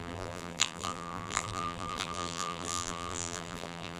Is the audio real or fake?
fake